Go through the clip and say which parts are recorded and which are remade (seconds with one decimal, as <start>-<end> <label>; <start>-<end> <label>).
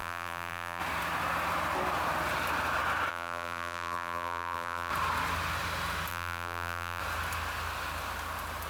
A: 0.0-0.8 remade; 0.8-3.1 recorded; 3.1-4.9 remade; 4.9-6.1 recorded; 6.1-7.0 remade; 7.0-8.7 recorded